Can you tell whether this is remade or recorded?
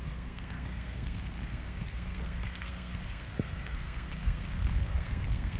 remade